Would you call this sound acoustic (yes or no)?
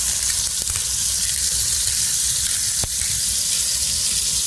no